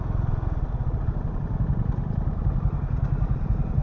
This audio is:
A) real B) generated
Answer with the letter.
A